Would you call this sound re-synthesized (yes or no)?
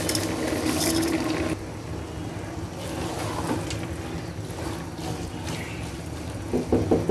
no